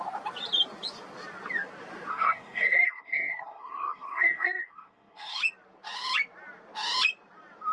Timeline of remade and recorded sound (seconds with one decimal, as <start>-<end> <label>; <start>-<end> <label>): 0.0-2.1 recorded; 2.1-5.4 remade; 5.4-7.7 recorded